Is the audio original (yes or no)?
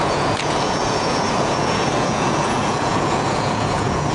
no